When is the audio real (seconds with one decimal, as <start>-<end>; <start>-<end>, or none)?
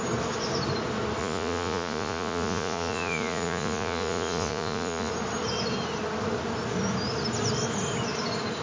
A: 0.0-1.2; 5.1-8.6